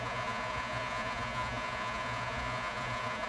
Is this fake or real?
fake